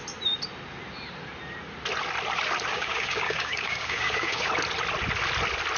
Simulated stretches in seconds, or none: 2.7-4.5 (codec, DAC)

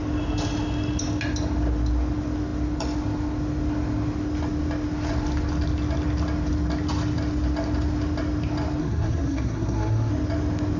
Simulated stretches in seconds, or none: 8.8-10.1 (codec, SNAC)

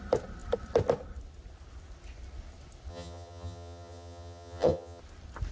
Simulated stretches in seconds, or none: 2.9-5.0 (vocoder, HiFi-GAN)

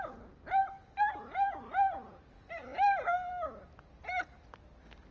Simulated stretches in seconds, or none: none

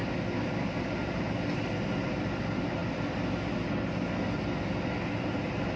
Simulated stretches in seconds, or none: 1.0-2.4 (vocoder, BigVGAN v2)